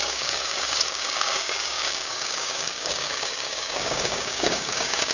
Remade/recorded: remade